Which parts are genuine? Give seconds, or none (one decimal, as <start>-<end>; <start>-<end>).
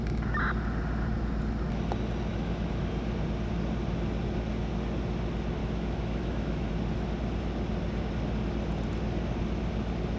0.0-2.3; 2.9-5.6; 6.7-10.2